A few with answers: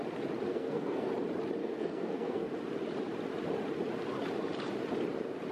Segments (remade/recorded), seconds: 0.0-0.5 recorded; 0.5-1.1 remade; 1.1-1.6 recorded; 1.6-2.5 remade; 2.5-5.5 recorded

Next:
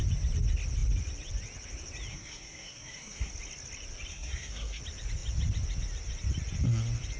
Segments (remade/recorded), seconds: 0.0-2.1 recorded; 2.1-3.3 remade; 3.3-4.1 recorded; 4.1-4.8 remade; 4.8-7.2 recorded

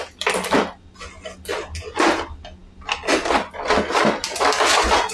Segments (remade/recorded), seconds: 0.0-5.1 recorded

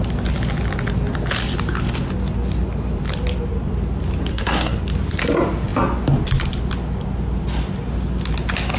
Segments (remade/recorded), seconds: 0.0-4.3 recorded; 4.3-4.8 remade; 4.8-8.8 recorded

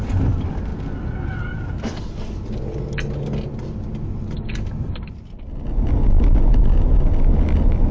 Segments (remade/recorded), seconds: 0.0-7.9 recorded